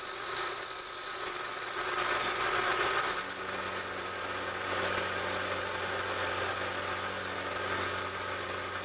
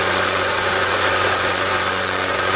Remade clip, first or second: second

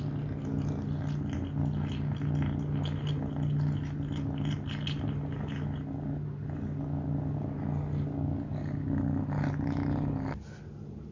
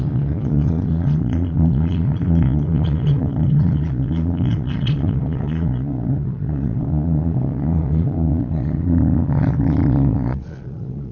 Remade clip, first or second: second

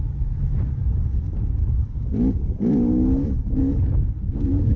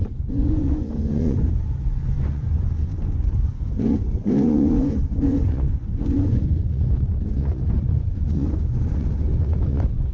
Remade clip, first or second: second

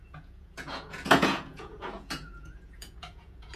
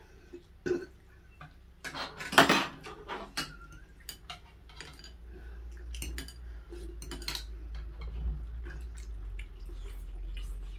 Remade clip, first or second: first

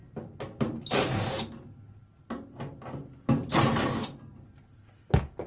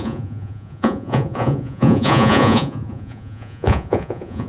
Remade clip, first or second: second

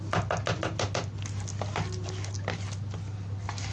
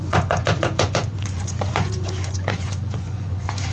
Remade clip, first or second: second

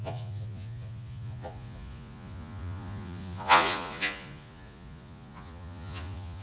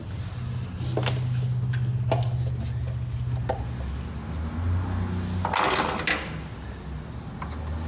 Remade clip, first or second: first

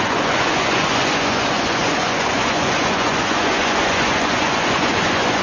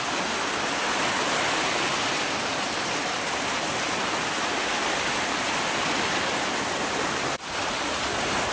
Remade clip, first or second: first